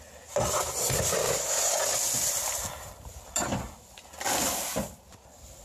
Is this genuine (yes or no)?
yes